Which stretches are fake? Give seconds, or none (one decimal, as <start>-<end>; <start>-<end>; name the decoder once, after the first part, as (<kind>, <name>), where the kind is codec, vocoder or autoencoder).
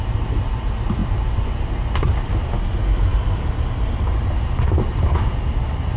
none